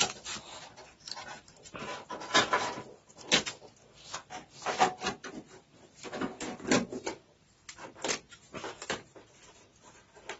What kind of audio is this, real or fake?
real